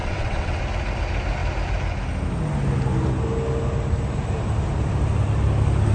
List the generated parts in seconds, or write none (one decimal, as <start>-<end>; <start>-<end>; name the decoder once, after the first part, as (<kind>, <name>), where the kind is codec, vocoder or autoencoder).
0.0-0.6 (vocoder, WaveNeXt)